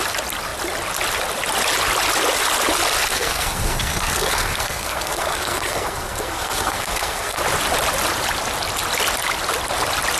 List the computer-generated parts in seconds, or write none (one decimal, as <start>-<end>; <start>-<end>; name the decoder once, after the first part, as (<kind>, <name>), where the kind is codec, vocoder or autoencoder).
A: 3.1-7.4 (codec, SNAC)